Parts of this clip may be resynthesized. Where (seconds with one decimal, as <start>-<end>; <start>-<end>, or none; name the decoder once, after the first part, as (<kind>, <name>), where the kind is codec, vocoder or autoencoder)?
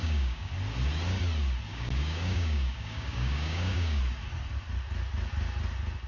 0.0-0.5 (codec, DAC); 1.7-4.0